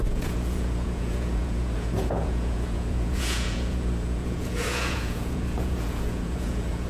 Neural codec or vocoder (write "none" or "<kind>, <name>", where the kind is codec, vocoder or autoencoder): vocoder, Vocos